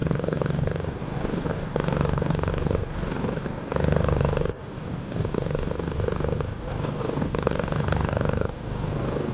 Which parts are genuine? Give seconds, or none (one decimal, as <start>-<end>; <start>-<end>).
none